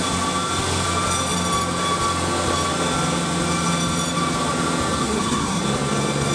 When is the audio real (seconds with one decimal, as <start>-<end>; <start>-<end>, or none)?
0.0-5.0; 5.6-6.3